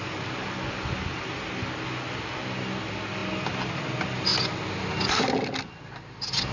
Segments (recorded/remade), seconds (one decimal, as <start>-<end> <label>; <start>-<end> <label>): 0.0-6.5 recorded

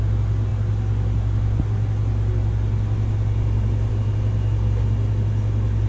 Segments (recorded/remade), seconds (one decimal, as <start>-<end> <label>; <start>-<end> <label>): 0.0-5.9 recorded

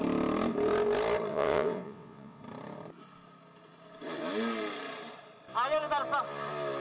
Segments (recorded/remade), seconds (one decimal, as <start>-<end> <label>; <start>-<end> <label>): 0.0-1.3 recorded; 1.3-2.4 remade; 2.4-6.8 recorded

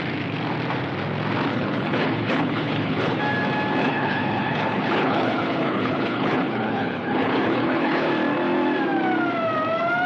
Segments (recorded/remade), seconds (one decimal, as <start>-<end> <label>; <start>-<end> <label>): 0.0-1.5 recorded; 1.5-3.2 remade; 3.2-3.8 recorded; 3.8-8.1 remade; 8.1-10.1 recorded

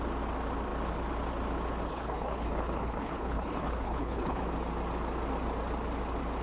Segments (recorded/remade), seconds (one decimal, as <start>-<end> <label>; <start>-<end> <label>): 0.0-1.9 recorded; 1.9-4.4 remade; 4.4-6.4 recorded

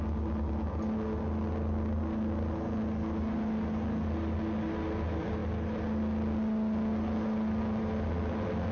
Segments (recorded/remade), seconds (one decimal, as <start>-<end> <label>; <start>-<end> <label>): 0.0-8.7 recorded